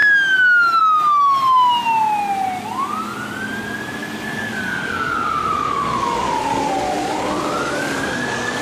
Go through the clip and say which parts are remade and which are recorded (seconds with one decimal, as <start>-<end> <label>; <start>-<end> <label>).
0.0-4.0 recorded; 4.0-8.6 remade